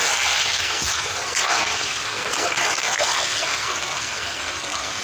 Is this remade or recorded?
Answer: remade